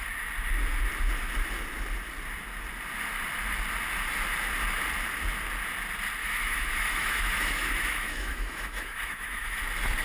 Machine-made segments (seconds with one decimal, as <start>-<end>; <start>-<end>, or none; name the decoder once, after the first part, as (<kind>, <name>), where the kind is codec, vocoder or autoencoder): 6.2-9.6 (autoencoder, DAC-VAE)